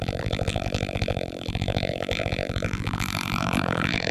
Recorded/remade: remade